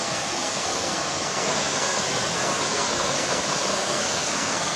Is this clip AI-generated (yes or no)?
yes